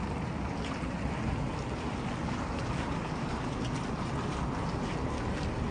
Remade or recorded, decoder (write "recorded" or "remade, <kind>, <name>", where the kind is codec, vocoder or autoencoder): recorded